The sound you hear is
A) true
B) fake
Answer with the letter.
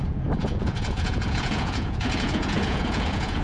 B